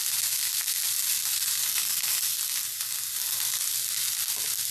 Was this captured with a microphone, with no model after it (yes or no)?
yes